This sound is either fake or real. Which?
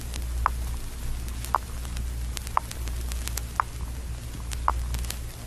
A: real